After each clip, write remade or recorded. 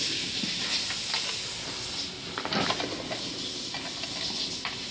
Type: recorded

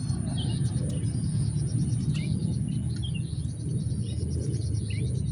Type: recorded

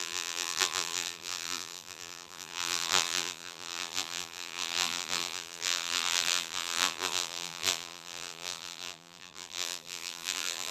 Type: remade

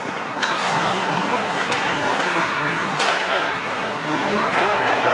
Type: remade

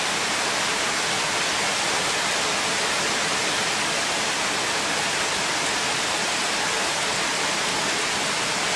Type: recorded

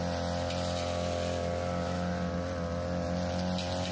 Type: recorded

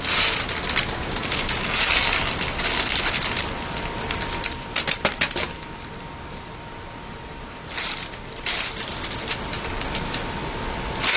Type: recorded